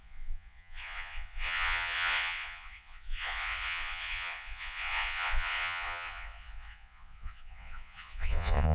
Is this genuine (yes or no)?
no